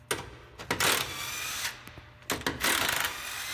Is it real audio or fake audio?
real